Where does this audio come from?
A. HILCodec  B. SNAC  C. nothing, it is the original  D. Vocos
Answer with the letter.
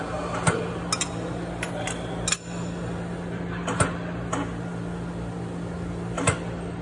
C